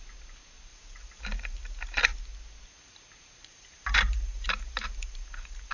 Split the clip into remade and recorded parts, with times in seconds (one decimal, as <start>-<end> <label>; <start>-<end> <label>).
0.0-0.7 recorded; 0.7-2.2 remade; 2.2-3.5 recorded; 3.5-5.7 remade